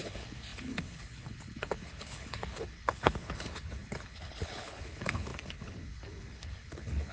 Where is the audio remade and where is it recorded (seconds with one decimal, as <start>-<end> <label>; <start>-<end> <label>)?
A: 0.0-7.1 remade